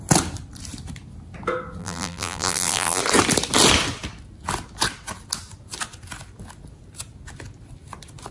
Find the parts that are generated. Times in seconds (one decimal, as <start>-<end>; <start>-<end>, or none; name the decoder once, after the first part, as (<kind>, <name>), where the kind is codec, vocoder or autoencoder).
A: 1.8-3.0 (vocoder, BigVGAN v2)